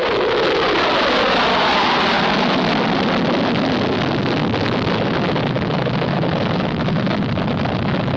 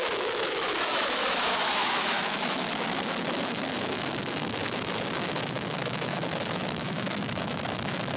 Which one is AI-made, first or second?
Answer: second